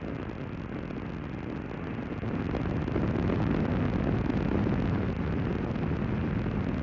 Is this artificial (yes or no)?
no